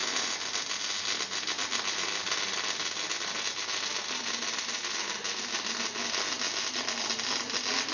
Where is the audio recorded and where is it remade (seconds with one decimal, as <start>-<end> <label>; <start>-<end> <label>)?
0.0-7.9 recorded